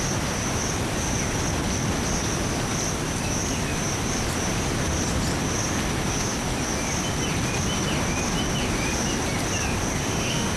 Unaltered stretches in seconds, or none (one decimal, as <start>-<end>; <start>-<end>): 0.0-10.0